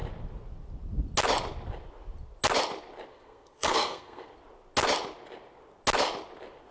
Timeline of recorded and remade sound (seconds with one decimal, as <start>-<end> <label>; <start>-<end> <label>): 0.0-3.1 recorded; 3.1-4.3 remade; 4.3-6.7 recorded